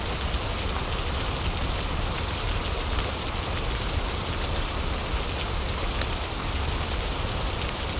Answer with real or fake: real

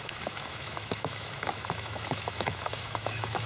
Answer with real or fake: fake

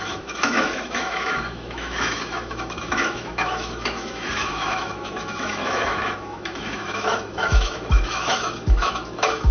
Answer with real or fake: fake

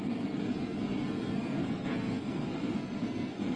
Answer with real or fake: fake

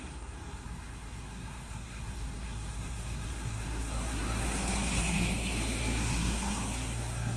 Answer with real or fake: fake